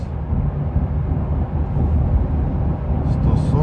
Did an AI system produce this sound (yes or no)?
no